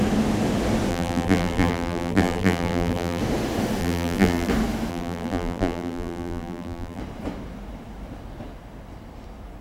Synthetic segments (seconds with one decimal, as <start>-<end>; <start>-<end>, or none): 0.9-3.2; 3.8-4.5; 4.9-7.0